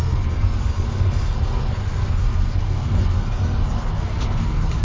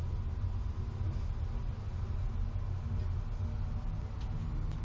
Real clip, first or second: second